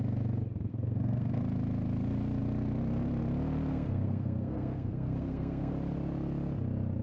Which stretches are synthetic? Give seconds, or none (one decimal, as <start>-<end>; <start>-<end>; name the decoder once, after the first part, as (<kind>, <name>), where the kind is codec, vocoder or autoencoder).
0.7-1.4 (codec, SNAC); 3.7-5.7